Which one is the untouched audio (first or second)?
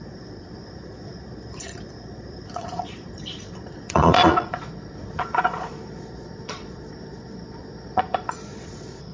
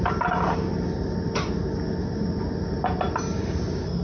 second